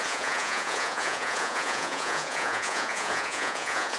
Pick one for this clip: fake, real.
fake